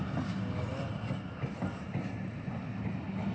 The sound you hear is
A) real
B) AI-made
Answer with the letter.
A